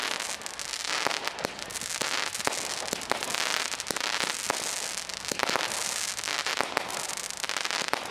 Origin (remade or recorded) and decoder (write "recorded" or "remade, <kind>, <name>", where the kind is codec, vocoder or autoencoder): recorded